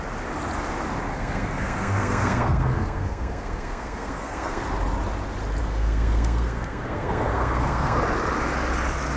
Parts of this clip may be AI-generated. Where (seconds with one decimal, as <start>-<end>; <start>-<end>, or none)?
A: 1.1-4.6; 5.6-8.0